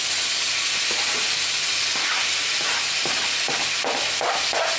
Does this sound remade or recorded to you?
recorded